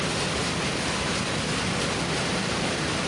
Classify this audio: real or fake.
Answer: real